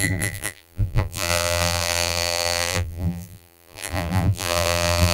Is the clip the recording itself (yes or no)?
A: no